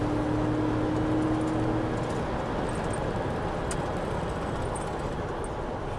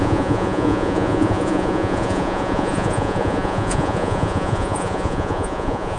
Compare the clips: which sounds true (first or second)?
first